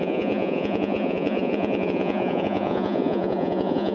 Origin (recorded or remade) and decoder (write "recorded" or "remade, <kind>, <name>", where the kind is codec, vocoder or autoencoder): remade, vocoder, Vocos